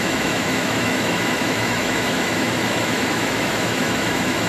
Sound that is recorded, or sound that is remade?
remade